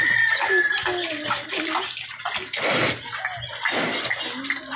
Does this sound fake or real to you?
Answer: real